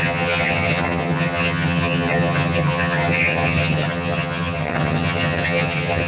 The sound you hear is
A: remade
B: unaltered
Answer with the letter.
A